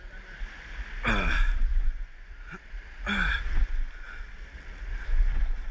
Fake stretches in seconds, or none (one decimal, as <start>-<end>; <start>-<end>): 1.7-2.3